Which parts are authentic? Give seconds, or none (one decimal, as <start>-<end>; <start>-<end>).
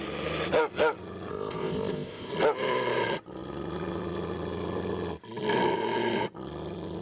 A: 0.0-1.3; 2.3-7.0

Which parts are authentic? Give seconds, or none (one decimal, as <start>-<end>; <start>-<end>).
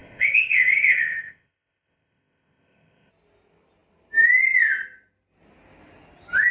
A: 3.1-6.5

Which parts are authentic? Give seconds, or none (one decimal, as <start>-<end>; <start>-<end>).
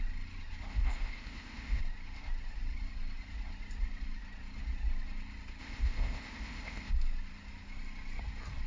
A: 0.0-0.7; 1.8-5.6; 6.9-8.7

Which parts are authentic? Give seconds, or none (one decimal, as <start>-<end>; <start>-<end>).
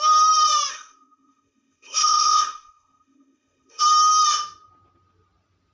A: 0.0-0.7; 3.8-5.7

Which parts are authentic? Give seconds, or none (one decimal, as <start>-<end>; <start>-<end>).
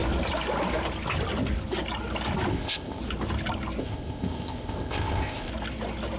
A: 0.0-2.5; 3.0-3.8; 5.5-6.2